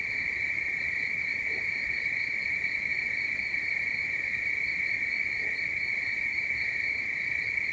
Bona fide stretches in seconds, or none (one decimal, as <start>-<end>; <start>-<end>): 0.0-7.7